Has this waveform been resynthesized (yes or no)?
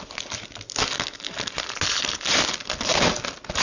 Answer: no